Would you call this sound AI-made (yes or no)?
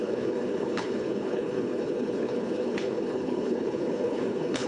yes